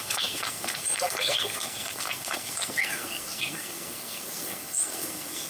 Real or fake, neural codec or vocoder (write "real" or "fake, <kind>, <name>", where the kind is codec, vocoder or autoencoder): fake, codec, SNAC